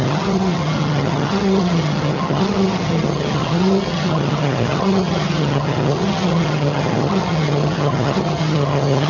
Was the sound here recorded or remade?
remade